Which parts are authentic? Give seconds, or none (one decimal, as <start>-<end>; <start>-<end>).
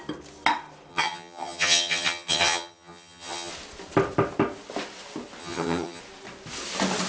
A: 0.0-0.9; 3.5-5.4; 6.0-7.1